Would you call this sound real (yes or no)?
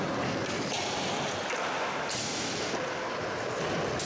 no